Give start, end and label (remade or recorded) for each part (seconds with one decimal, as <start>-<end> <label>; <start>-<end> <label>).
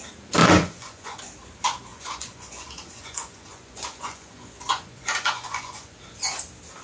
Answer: 0.0-0.4 recorded; 0.4-1.2 remade; 1.2-1.9 recorded; 1.9-6.0 remade; 6.0-6.8 recorded